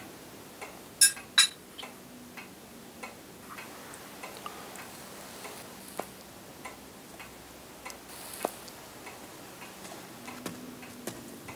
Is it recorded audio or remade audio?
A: recorded